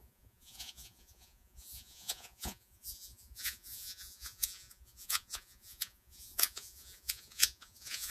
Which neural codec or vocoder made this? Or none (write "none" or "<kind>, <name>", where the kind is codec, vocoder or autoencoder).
vocoder, Vocos